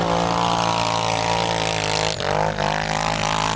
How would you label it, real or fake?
real